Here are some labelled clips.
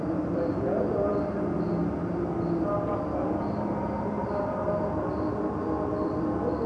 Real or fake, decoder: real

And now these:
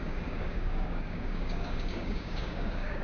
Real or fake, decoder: fake, codec, DAC